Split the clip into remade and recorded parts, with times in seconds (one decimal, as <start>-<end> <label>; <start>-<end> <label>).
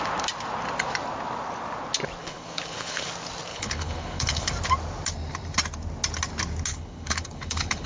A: 0.0-2.2 recorded; 2.2-3.1 remade; 3.1-3.5 recorded; 3.5-4.5 remade; 4.5-6.7 recorded; 6.7-7.9 remade